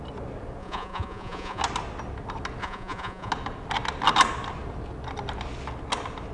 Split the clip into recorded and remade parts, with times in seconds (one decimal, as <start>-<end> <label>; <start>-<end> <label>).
0.0-0.6 recorded; 0.6-1.6 remade; 1.6-2.6 recorded; 2.6-3.3 remade; 3.3-6.3 recorded